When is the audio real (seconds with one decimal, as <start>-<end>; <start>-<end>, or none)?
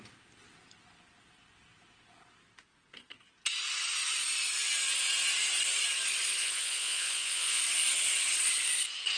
0.0-6.4; 7.6-9.2